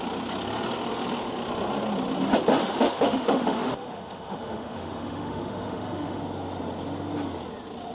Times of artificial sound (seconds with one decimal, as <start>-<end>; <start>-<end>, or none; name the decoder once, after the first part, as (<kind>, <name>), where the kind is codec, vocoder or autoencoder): 2.6-6.2 (autoencoder, DAC-VAE)